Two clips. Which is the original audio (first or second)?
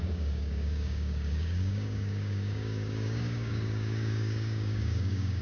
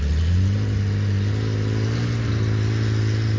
second